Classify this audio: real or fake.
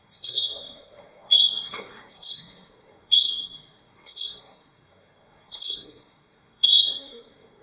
fake